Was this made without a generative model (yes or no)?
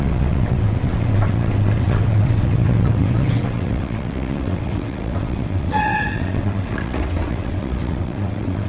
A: no